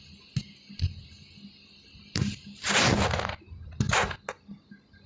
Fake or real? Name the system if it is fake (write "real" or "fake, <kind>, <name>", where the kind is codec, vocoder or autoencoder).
real